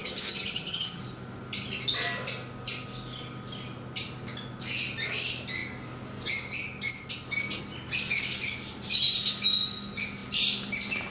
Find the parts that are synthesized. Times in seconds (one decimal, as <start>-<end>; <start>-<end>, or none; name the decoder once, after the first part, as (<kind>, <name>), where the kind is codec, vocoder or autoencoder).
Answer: 0.0-1.0 (vocoder, HiFi-GAN)